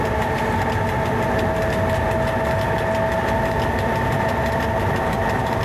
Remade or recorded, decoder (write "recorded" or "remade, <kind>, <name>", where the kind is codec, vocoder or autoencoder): recorded